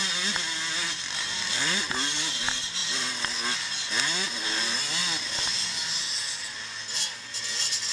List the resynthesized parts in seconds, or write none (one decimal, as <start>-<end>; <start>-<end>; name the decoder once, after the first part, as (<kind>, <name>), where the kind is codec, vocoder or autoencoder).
none